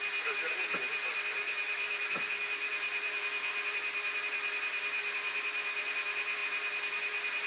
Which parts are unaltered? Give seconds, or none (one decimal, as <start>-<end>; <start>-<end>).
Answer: 0.0-1.4; 2.7-7.5